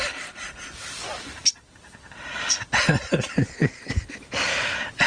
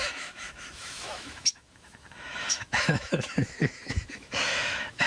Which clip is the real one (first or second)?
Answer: first